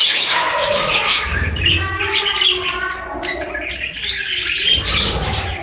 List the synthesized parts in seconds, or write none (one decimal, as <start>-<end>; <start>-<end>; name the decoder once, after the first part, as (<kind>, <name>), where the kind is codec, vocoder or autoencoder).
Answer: 0.0-2.0 (autoencoder, DAC-VAE)